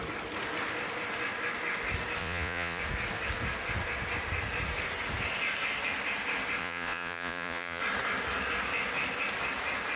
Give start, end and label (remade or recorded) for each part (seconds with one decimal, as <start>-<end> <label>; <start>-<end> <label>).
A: 0.0-2.2 recorded; 2.2-2.8 remade; 2.8-6.6 recorded; 6.6-7.8 remade; 7.8-10.0 recorded